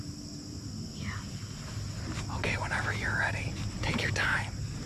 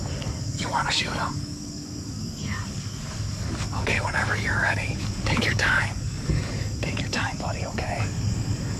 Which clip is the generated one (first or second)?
second